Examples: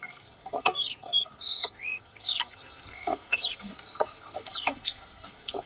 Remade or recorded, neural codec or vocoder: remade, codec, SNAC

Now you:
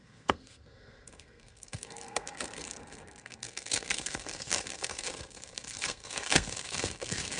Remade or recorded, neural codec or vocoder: remade, codec, SNAC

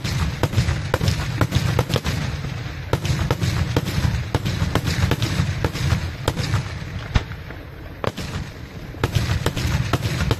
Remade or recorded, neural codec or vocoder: recorded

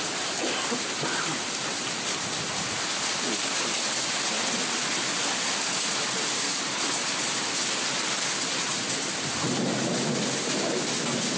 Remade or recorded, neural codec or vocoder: recorded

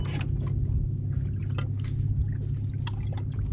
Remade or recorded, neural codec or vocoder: recorded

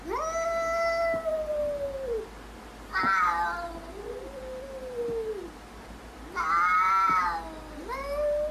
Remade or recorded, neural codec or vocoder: recorded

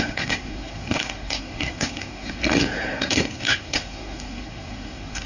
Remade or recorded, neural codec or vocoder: remade, codec, SNAC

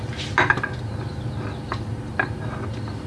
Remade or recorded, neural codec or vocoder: recorded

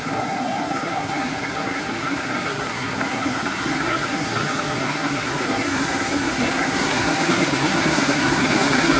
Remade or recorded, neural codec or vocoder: remade, codec, SNAC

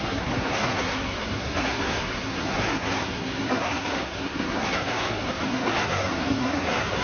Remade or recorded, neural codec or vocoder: remade, codec, SNAC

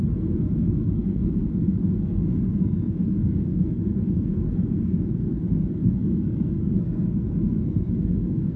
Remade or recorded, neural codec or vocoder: remade, codec, SNAC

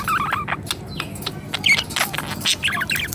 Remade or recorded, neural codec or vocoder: recorded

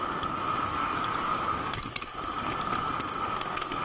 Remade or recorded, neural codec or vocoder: recorded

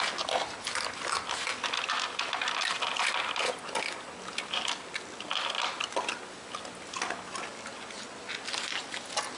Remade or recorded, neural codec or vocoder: recorded